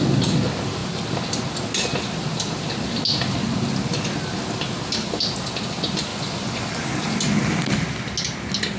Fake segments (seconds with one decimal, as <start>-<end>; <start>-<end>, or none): 6.1-6.8